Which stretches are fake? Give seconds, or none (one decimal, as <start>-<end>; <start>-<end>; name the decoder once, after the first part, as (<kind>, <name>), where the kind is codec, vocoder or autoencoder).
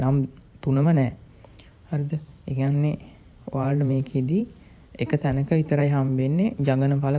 0.0-7.2 (vocoder, BigVGAN v2)